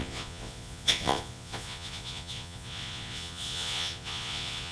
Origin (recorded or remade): remade